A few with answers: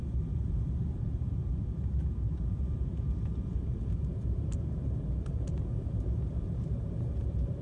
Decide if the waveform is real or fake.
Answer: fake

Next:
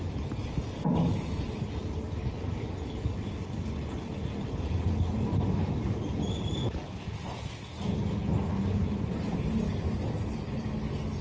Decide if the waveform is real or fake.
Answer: real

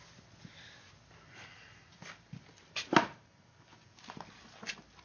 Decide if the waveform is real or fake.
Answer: real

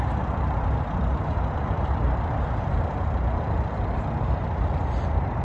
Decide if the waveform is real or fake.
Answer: fake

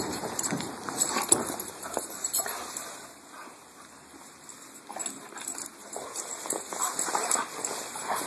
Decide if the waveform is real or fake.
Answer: fake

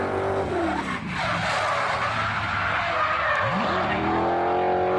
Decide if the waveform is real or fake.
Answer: real